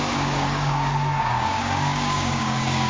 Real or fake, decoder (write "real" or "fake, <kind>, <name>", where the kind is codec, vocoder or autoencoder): fake, codec, DAC